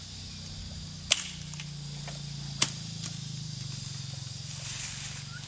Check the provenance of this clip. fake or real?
real